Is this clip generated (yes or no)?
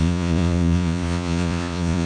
yes